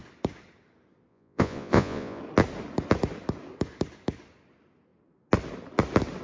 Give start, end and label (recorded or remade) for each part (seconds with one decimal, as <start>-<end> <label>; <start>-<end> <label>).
0.0-1.1 recorded; 1.1-2.2 remade; 2.2-6.2 recorded